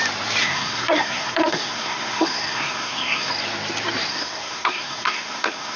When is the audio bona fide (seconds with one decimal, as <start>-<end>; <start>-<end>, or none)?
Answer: 0.0-0.4; 3.3-4.1